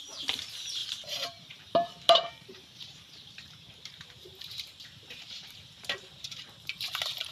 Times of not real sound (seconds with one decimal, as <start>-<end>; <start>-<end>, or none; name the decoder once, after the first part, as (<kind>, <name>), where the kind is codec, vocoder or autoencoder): 0.0-7.3 (vocoder, BigVGAN v2)